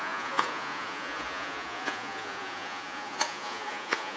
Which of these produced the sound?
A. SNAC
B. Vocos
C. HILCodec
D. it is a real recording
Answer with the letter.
B